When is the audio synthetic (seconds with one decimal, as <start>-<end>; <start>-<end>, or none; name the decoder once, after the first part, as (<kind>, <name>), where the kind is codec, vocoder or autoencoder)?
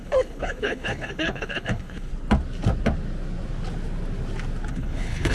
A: 0.0-2.1 (codec, HILCodec); 4.7-5.3